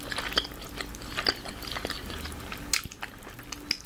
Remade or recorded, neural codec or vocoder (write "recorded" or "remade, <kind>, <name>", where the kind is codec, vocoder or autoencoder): recorded